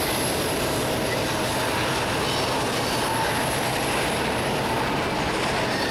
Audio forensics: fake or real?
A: real